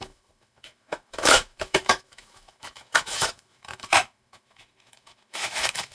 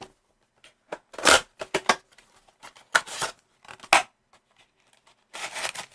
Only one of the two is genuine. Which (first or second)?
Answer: second